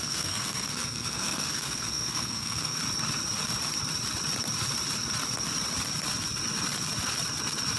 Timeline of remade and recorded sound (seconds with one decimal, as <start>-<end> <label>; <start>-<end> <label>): 0.0-2.8 remade; 2.8-7.8 recorded